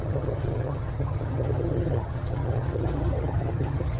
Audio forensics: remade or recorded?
remade